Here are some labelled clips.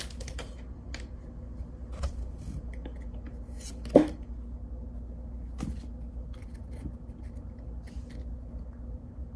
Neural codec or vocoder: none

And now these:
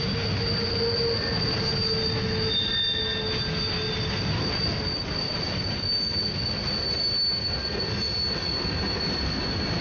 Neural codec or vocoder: none